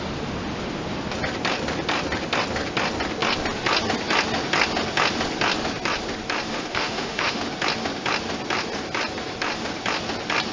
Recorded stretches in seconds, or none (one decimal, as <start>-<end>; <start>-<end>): 0.0-6.5; 7.4-10.5